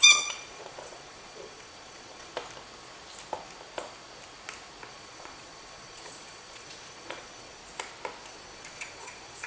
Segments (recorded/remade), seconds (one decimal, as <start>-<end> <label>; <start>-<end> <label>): 0.0-2.3 remade; 2.3-4.9 recorded; 4.9-7.6 remade; 7.6-8.3 recorded; 8.3-9.5 remade

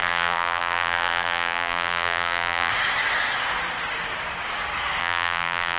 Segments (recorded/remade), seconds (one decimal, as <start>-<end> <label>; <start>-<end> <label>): 0.0-2.7 remade; 2.7-5.0 recorded; 5.0-5.8 remade

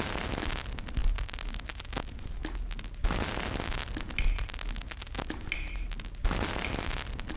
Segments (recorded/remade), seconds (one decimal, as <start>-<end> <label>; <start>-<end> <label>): 0.0-7.4 recorded

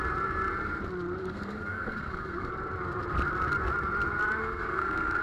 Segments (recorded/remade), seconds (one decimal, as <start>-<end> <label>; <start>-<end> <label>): 0.0-1.2 recorded; 1.2-2.5 remade; 2.5-4.4 recorded; 4.4-5.2 remade

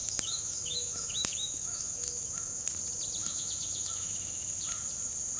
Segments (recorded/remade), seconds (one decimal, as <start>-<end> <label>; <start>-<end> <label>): 0.0-2.8 remade; 2.8-3.2 recorded; 3.2-4.5 remade; 4.5-5.4 recorded

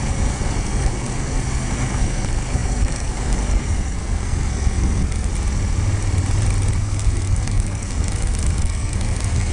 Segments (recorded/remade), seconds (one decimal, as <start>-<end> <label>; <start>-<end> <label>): 0.0-5.3 remade; 5.3-6.8 recorded; 6.8-9.5 remade

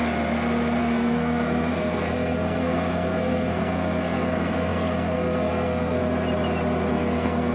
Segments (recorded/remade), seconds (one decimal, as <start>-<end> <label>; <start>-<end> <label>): 0.0-0.8 recorded; 0.8-6.0 remade; 6.0-6.9 recorded; 6.9-7.5 remade